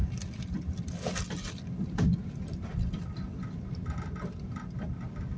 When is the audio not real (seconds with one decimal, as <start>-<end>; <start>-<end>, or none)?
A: none